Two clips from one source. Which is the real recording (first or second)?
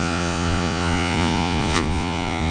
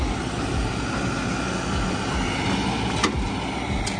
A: second